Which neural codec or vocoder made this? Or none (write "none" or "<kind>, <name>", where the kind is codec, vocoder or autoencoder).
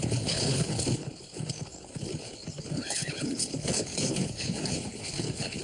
codec, HILCodec